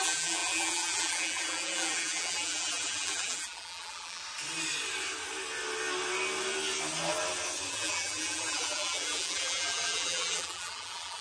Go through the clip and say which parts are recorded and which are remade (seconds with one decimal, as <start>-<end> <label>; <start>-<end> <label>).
0.0-4.2 remade; 4.2-7.7 recorded; 7.7-11.2 remade